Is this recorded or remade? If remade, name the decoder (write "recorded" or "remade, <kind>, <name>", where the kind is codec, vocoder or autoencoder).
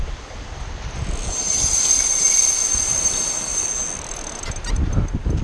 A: recorded